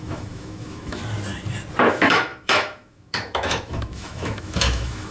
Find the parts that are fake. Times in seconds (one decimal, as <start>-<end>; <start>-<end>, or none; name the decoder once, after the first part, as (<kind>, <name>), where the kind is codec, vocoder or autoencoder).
0.0-1.0 (autoencoder, DAC-VAE); 1.9-5.1